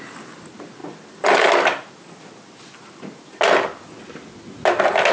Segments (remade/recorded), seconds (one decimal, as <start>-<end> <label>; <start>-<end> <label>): 0.0-5.1 recorded